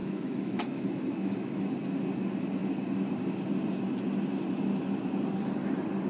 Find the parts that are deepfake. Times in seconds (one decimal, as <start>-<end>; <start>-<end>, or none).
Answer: 0.0-1.6